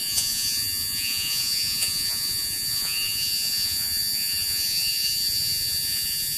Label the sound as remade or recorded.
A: remade